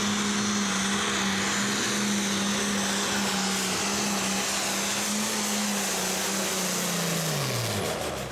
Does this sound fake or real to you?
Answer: real